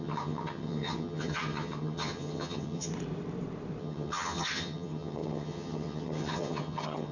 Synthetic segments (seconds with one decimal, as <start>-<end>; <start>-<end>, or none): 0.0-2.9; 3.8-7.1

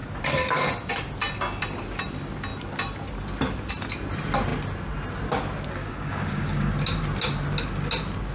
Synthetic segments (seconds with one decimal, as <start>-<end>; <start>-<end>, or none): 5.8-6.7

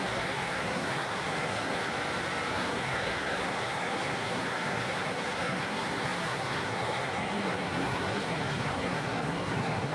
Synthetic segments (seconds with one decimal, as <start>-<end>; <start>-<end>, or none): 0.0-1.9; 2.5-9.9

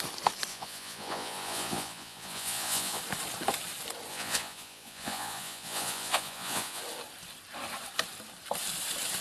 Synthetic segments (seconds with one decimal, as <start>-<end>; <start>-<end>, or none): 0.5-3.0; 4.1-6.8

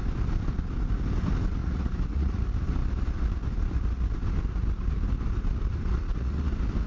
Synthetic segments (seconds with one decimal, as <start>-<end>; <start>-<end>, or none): 1.6-2.4; 5.9-6.5

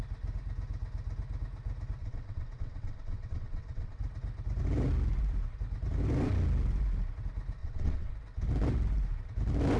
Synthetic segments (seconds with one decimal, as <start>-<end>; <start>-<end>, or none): 2.0-4.0; 7.6-8.1